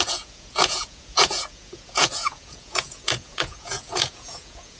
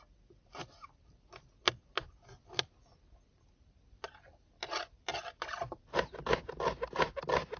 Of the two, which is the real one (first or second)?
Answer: second